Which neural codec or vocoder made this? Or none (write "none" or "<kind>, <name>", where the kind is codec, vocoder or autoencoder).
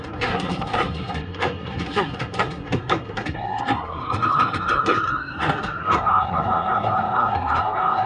codec, SNAC